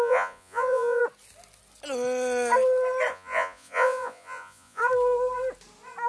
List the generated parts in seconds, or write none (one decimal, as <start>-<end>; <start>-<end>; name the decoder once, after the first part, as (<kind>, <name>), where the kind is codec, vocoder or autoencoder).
0.0-1.0 (vocoder, Vocos); 3.1-4.8